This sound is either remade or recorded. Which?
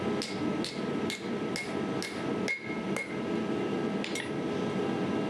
recorded